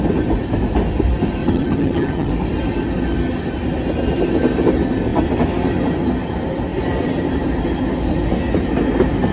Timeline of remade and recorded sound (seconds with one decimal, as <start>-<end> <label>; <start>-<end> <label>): 0.0-1.4 recorded; 1.4-2.3 remade; 2.3-9.3 recorded

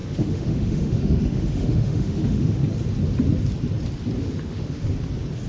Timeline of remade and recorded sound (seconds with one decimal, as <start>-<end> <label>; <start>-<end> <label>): 0.0-2.6 remade; 2.6-4.2 recorded; 4.2-4.8 remade; 4.8-5.5 recorded

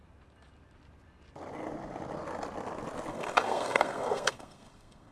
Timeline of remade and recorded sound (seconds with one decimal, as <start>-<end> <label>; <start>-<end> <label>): 0.0-3.1 recorded; 3.1-5.1 remade

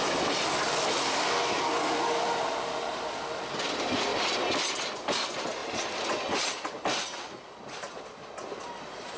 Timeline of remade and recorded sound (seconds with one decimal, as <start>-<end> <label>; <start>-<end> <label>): 0.0-9.2 recorded

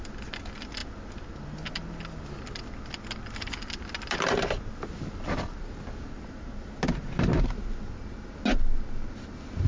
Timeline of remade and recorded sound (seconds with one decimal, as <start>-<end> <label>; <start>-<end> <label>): 0.0-9.7 recorded